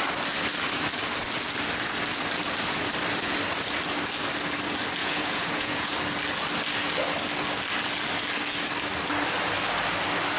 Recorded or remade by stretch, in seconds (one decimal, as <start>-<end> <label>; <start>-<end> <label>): 0.0-5.0 recorded; 5.0-5.9 remade; 5.9-10.4 recorded